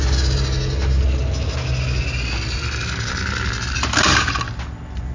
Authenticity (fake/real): real